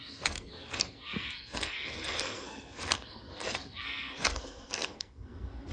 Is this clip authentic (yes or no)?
no